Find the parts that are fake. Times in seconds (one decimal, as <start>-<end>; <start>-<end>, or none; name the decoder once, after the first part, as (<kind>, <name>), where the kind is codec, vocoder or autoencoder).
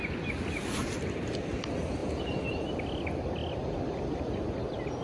0.8-1.6 (vocoder, BigVGAN v2); 2.0-2.8; 3.4-4.2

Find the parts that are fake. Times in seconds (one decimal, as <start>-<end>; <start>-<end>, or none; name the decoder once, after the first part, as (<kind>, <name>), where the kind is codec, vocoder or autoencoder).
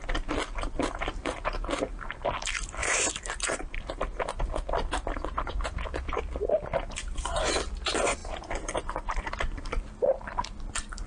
0.0-11.1 (vocoder, BigVGAN v2)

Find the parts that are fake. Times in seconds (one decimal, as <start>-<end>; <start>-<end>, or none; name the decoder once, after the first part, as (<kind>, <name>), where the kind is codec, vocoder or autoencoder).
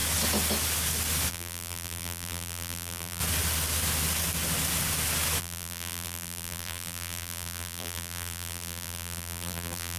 1.3-3.2 (vocoder, BigVGAN v2); 5.4-10.0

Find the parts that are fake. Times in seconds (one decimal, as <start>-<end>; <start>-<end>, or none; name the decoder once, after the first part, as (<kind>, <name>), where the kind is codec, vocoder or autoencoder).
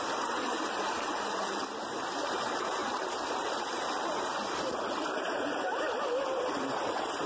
0.0-7.3 (vocoder, BigVGAN v2)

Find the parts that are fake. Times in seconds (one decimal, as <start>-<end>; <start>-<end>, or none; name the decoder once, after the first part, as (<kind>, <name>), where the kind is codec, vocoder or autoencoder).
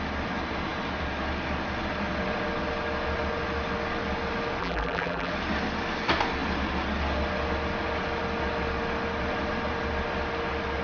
4.6-5.3 (vocoder, BigVGAN v2)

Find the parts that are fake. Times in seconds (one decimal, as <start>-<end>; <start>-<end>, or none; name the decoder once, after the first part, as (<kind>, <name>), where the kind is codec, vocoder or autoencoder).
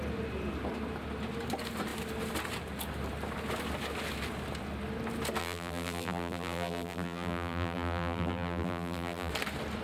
5.4-9.3 (vocoder, BigVGAN v2)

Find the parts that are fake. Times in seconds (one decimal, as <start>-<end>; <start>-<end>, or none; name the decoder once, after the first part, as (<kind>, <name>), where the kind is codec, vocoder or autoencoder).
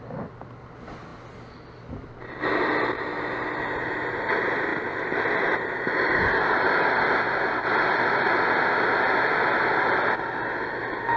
4.7-7.3 (vocoder, BigVGAN v2)